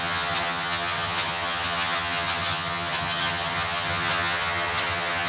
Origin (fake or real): fake